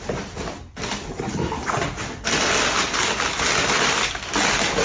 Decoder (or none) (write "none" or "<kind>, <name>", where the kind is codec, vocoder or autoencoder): none